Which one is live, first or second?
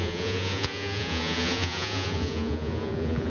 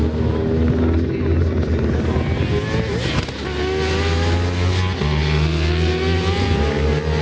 second